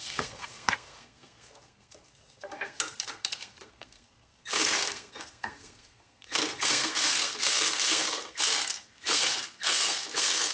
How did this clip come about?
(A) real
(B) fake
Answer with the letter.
B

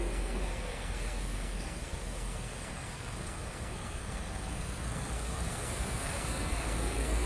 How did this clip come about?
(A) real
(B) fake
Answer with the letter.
B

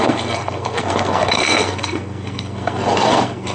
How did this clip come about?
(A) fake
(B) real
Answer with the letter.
A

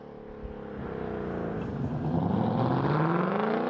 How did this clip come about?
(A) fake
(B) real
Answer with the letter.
B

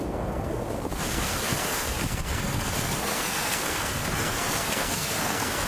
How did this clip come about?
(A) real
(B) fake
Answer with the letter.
B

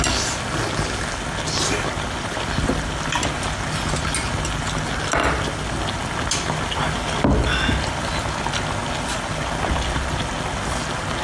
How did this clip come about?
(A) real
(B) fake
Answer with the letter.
A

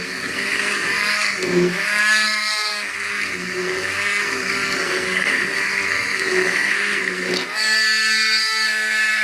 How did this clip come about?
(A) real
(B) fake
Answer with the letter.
B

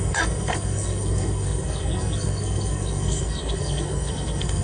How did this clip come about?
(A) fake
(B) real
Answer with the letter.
A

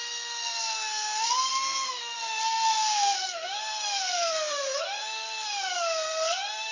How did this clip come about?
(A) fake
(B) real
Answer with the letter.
A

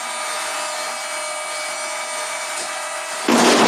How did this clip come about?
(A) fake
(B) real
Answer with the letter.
B